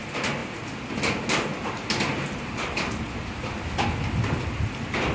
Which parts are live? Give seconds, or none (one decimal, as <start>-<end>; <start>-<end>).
0.0-5.1